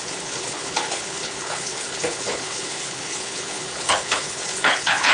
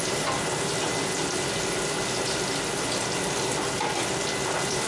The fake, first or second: first